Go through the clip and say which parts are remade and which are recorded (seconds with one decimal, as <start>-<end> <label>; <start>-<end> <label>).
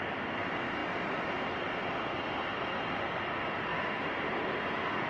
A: 0.0-3.7 recorded; 3.7-4.4 remade; 4.4-5.1 recorded